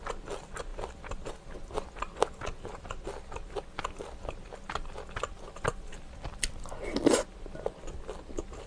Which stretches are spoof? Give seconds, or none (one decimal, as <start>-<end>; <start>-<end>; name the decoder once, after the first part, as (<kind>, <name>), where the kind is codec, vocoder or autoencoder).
none